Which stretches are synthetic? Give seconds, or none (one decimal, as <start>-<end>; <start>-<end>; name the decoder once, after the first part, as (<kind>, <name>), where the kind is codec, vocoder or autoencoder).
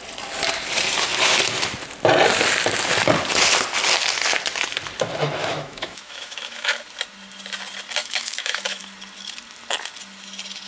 5.4-6.8 (autoencoder, DAC-VAE); 8.0-8.8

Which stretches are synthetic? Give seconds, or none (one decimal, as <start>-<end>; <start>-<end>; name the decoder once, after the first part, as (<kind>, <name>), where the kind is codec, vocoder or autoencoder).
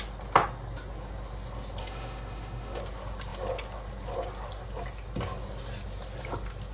1.8-2.8 (autoencoder, DAC-VAE)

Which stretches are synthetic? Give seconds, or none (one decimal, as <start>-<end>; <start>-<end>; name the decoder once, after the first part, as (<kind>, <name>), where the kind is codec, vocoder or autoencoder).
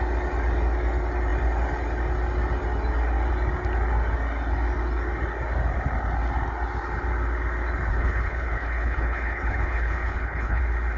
7.9-10.6 (codec, HILCodec)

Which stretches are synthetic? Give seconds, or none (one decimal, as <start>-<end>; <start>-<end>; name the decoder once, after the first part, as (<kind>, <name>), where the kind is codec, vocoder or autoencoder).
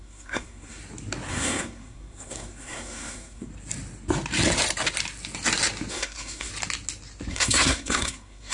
0.0-0.8 (codec, SNAC); 1.3-3.5; 5.9-6.5; 7.3-8.5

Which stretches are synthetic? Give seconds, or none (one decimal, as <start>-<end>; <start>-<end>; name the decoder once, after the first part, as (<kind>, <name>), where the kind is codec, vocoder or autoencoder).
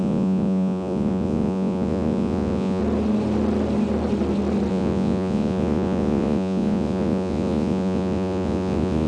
0.0-2.8 (vocoder, Vocos); 4.7-9.1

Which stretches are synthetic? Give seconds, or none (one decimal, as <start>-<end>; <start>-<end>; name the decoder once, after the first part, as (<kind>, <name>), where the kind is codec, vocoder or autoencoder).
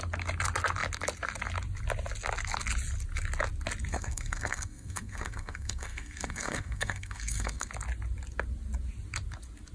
3.9-7.7 (codec, SNAC)